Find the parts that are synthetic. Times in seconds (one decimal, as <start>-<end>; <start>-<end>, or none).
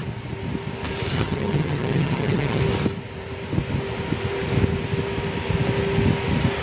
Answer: 1.1-2.6